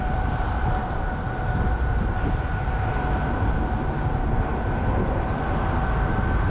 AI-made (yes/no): no